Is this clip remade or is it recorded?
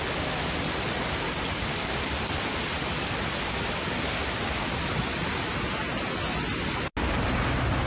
recorded